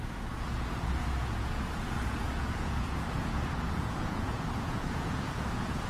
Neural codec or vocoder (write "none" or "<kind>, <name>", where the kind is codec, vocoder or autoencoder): vocoder, Vocos